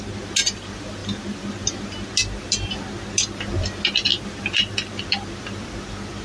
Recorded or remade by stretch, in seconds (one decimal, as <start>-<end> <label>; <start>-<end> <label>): 0.0-6.2 recorded